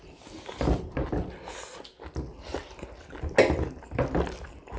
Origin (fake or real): real